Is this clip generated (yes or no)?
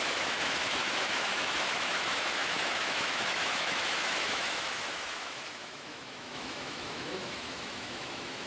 yes